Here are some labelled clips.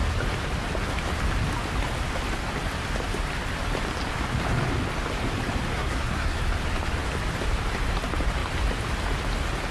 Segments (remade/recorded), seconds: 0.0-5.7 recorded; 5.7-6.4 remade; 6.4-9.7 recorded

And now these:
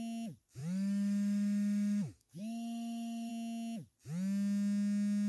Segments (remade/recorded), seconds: 0.0-0.6 recorded; 0.6-3.3 remade; 3.3-5.3 recorded

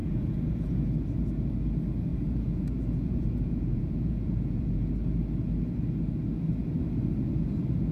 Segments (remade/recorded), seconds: 0.0-0.8 remade; 0.8-2.1 recorded; 2.1-4.9 remade; 4.9-7.9 recorded

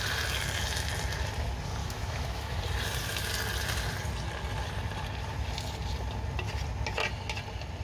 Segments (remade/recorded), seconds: 0.0-1.8 recorded; 1.8-2.6 remade; 2.6-7.8 recorded